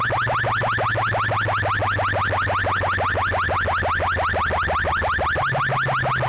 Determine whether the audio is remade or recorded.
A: recorded